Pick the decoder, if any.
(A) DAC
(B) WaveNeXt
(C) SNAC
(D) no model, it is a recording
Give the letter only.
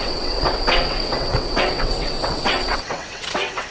B